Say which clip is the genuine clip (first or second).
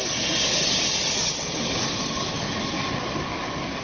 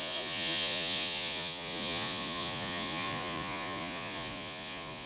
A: first